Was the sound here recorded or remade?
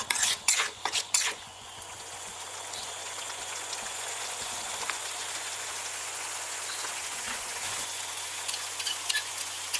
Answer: remade